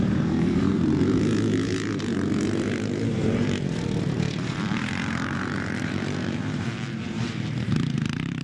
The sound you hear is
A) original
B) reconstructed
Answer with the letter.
B